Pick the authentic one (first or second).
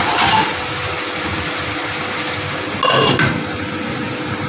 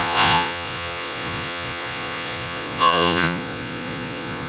first